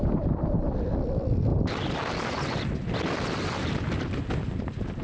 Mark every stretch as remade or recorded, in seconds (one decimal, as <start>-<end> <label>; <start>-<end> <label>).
0.0-5.0 recorded